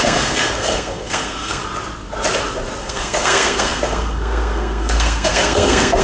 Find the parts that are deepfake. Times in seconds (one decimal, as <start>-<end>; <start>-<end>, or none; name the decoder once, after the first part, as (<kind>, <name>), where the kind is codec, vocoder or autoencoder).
0.0-1.6 (codec, SNAC); 2.8-6.0